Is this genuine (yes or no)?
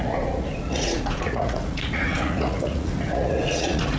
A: no